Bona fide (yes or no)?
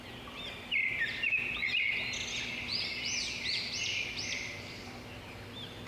yes